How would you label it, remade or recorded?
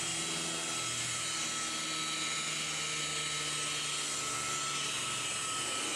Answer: recorded